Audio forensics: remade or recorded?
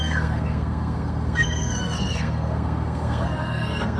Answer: remade